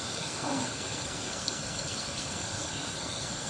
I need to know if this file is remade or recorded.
remade